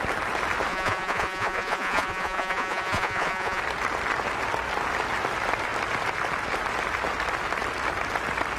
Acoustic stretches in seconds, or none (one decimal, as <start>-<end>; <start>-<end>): 0.0-0.7; 3.6-8.6